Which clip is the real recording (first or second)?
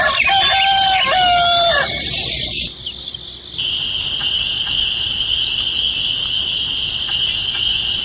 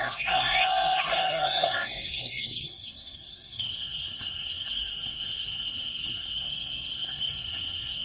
first